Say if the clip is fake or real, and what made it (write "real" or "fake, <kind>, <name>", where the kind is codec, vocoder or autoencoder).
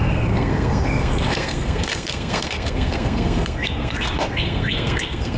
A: fake, codec, SNAC